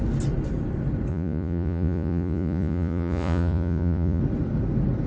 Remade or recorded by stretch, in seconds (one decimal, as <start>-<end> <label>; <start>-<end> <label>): 0.0-1.1 recorded; 1.1-4.2 remade; 4.2-5.1 recorded